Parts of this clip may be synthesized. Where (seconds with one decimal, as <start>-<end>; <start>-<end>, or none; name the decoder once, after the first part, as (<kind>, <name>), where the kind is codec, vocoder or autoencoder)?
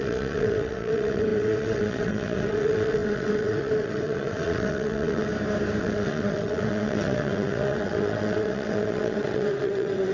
0.0-5.3 (vocoder, WaveNeXt); 5.8-10.1